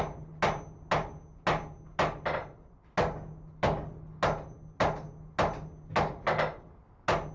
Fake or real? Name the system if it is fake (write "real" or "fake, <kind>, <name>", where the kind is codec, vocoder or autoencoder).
real